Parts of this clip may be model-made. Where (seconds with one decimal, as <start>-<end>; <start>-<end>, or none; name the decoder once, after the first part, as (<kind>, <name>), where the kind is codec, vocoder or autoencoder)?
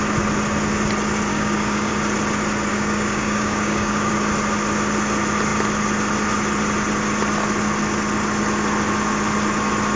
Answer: 1.3-1.9 (codec, DAC); 2.7-4.1